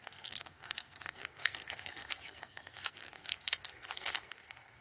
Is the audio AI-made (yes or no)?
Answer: yes